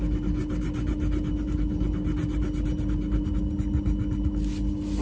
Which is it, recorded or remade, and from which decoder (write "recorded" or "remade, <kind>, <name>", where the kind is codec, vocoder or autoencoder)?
recorded